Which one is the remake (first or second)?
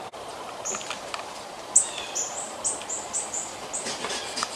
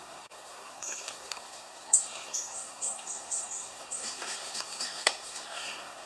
second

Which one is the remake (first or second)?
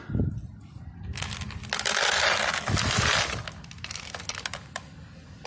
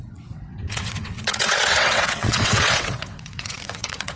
second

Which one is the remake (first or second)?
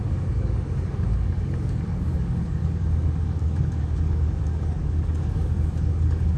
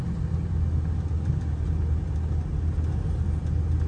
first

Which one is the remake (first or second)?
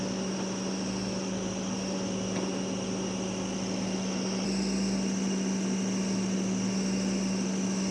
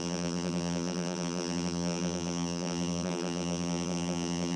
second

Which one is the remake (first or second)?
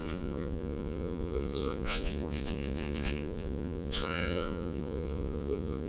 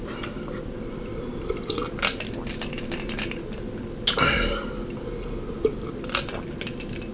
first